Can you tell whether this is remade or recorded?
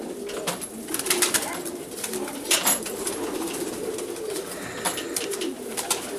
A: recorded